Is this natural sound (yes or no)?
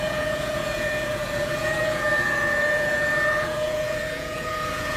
no